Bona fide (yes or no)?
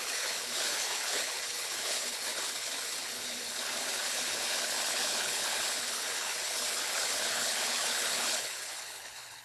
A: no